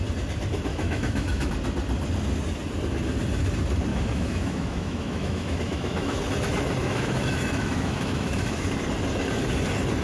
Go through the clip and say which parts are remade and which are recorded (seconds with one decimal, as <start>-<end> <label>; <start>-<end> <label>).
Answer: 0.0-0.7 recorded; 0.7-1.5 remade; 1.5-3.9 recorded; 3.9-6.2 remade; 6.2-6.8 recorded; 6.8-8.7 remade; 8.7-10.0 recorded